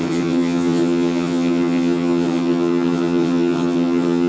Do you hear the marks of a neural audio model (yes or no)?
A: yes